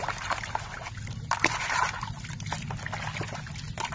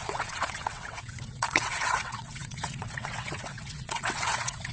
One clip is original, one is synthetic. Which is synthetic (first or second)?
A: second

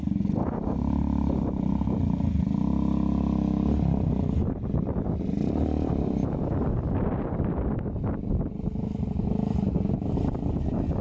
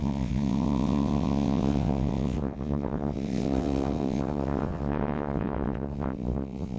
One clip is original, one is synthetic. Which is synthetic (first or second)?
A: second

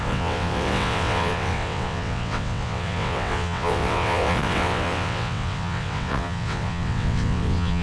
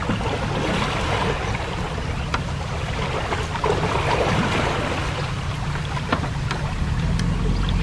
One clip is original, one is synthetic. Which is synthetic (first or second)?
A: first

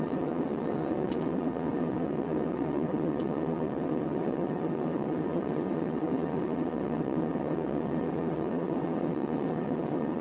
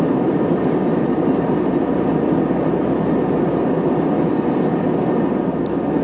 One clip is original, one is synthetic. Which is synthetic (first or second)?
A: first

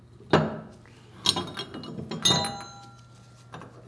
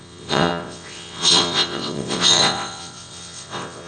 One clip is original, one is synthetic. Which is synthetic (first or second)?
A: second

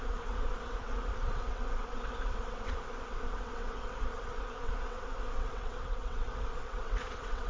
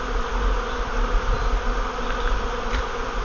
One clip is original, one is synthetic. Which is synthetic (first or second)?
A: first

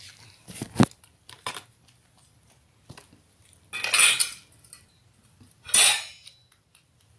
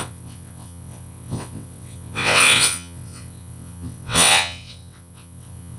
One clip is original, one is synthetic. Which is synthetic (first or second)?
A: second